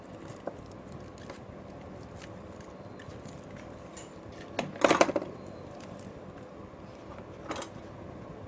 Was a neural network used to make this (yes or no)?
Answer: no